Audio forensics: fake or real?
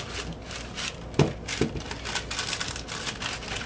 real